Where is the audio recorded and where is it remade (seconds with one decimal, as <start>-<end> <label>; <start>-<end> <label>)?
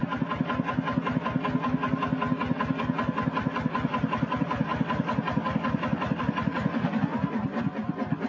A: 0.0-3.2 recorded; 3.2-4.7 remade; 4.7-6.2 recorded; 6.2-8.3 remade